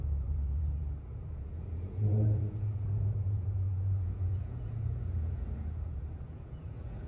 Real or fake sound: fake